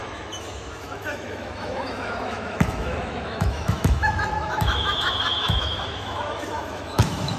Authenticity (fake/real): fake